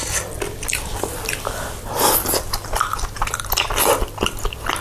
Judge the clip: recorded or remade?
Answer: recorded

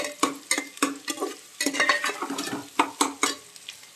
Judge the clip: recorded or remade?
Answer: recorded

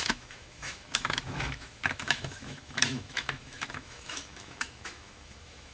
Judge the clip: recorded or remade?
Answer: remade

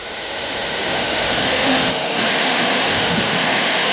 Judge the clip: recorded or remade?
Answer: remade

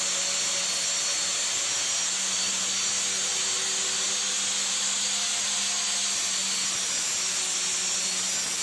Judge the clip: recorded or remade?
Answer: recorded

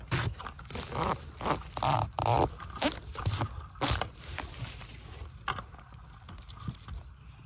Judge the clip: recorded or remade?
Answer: recorded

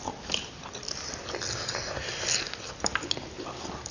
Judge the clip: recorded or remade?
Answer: recorded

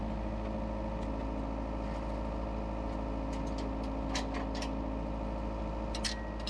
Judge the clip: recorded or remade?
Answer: recorded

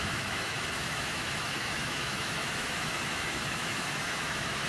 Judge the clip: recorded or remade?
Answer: remade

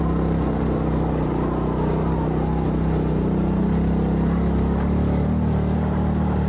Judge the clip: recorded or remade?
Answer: recorded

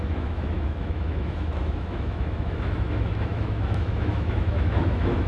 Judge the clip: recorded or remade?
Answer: remade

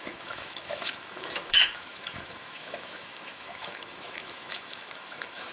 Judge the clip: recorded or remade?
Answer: remade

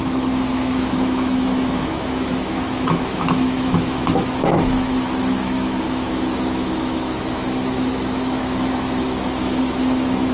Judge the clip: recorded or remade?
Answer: remade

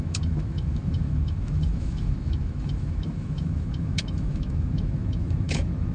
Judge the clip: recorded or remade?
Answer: remade